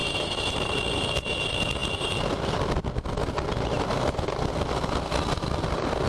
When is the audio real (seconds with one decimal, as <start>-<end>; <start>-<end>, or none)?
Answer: 0.7-6.1